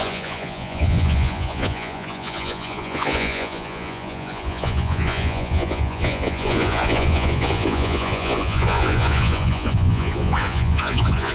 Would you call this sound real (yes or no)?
no